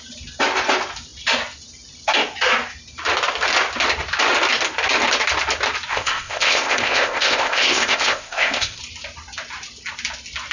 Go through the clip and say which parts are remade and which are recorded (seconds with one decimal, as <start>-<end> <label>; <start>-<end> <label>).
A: 0.0-5.9 recorded; 5.9-8.8 remade; 8.8-10.5 recorded